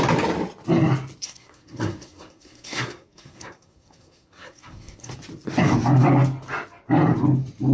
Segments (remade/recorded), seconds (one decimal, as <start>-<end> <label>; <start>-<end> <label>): 0.0-1.2 recorded; 1.2-5.1 remade; 5.1-7.7 recorded